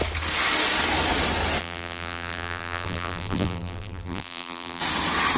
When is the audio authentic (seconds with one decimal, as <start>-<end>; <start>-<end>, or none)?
0.0-1.6; 4.8-5.4